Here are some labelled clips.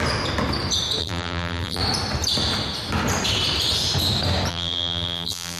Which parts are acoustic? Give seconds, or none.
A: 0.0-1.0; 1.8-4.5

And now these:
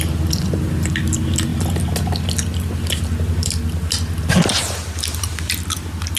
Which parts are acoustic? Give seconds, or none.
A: 0.0-6.2

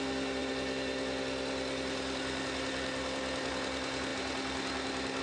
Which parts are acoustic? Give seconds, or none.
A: 0.0-5.2

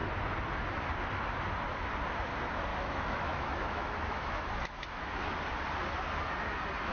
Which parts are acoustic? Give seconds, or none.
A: 0.0-2.7; 5.3-6.9